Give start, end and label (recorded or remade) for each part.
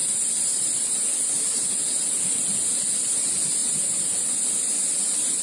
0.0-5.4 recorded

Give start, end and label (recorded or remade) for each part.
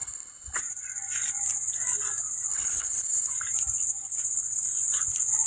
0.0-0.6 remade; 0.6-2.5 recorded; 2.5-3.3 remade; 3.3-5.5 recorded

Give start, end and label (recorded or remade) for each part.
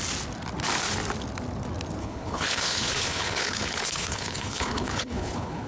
0.0-2.0 recorded; 2.0-5.7 remade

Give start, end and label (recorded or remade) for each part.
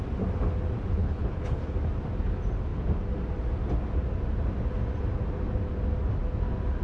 0.0-1.0 recorded; 1.0-1.7 remade; 1.7-6.8 recorded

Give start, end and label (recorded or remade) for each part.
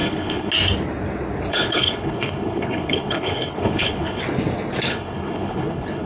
0.0-0.5 remade; 0.5-1.5 recorded; 1.5-4.2 remade; 4.2-4.9 recorded; 4.9-6.1 remade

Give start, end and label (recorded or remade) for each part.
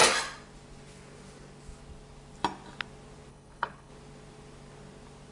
0.0-3.3 recorded; 3.3-3.9 remade; 3.9-5.3 recorded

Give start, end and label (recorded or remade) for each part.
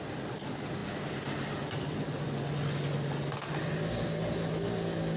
0.0-5.2 recorded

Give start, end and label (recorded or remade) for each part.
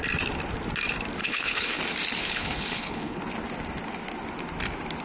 0.0-1.2 recorded; 1.2-1.8 remade; 1.8-2.2 recorded; 2.2-3.2 remade; 3.2-5.0 recorded